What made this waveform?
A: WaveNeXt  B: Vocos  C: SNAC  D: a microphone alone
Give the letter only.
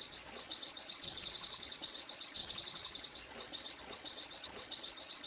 B